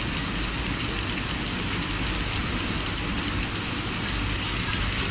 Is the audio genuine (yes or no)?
yes